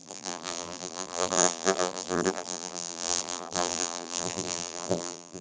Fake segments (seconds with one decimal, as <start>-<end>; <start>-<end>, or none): 0.0-5.4

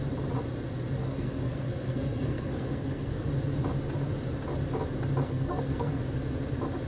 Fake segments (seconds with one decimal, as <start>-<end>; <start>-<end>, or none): 1.0-3.3; 5.2-6.0

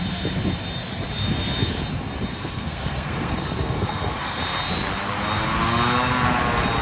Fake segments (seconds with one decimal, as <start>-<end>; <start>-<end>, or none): 2.3-4.4

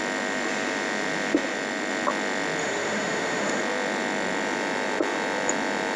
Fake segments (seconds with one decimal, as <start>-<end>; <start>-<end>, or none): 2.6-3.6

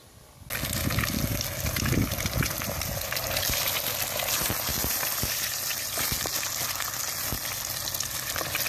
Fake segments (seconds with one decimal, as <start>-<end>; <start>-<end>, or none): 1.3-3.9; 4.7-5.9